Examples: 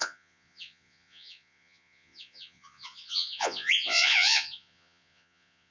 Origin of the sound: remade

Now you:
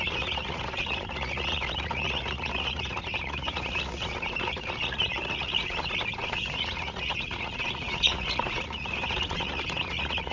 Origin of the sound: remade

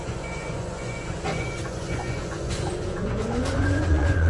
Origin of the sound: remade